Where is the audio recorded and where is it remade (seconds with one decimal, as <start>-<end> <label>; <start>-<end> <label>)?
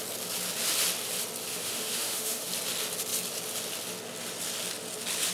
0.0-1.5 recorded; 1.5-2.5 remade; 2.5-5.3 recorded